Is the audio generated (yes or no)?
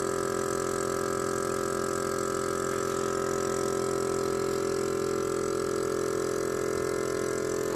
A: no